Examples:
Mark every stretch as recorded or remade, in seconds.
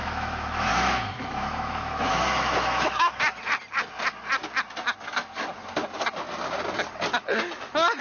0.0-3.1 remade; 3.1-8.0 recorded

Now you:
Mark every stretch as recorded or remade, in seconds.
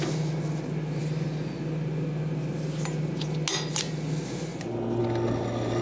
0.0-5.8 recorded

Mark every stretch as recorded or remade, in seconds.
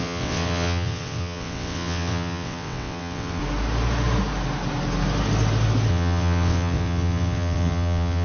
0.0-3.4 remade; 3.4-5.9 recorded; 5.9-8.2 remade